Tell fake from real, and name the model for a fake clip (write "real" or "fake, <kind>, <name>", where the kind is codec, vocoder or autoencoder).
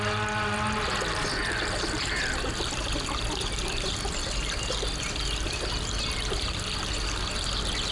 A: real